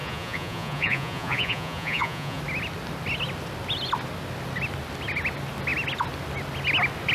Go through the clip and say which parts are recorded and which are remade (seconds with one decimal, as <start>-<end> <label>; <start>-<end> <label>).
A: 0.0-2.4 remade; 2.4-7.1 recorded